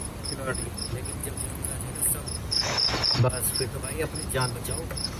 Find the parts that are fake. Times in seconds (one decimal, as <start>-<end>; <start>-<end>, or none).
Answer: none

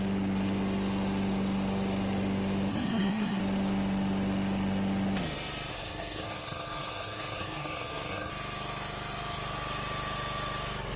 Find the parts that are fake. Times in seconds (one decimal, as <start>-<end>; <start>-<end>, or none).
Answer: 2.7-3.4; 5.7-8.3

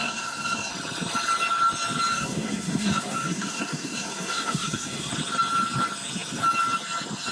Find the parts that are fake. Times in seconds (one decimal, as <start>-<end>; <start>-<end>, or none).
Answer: 0.0-0.7; 2.1-5.1

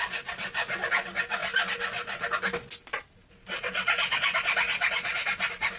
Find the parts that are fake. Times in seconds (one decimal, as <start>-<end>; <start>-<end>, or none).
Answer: none

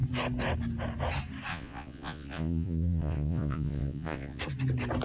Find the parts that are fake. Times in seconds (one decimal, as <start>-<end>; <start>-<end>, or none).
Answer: 1.5-4.4

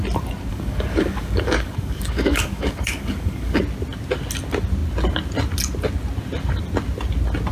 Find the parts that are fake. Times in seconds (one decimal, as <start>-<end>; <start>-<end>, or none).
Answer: 0.5-3.6

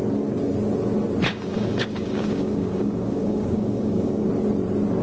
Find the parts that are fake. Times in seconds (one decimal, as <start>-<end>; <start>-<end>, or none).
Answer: 1.3-4.3

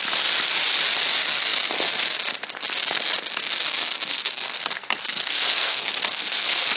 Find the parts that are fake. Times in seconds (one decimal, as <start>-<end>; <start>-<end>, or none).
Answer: 4.1-6.8